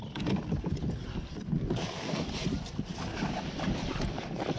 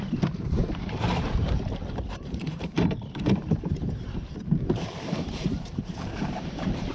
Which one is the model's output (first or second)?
second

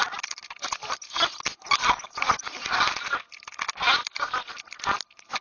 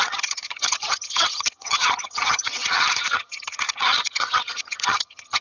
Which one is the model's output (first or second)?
second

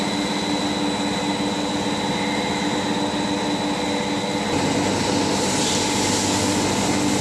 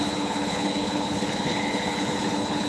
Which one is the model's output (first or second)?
second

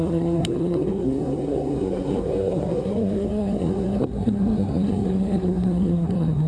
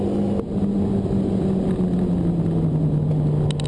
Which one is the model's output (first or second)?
first